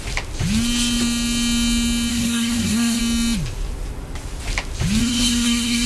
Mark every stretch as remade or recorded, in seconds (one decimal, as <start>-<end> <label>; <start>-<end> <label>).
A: 0.0-2.1 recorded; 2.1-3.0 remade; 3.0-5.0 recorded; 5.0-5.9 remade